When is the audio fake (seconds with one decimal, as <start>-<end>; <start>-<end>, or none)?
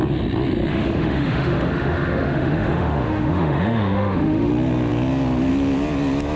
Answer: 0.7-4.5